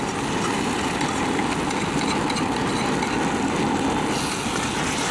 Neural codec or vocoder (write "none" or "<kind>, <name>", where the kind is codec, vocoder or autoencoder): none